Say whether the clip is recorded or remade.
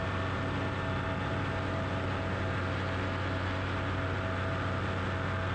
recorded